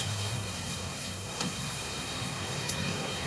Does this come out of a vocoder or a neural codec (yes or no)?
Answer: yes